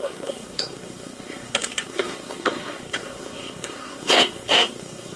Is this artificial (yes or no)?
yes